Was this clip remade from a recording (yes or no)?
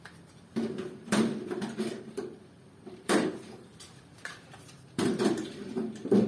yes